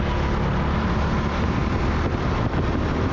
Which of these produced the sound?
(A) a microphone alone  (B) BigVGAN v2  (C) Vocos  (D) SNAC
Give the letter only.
A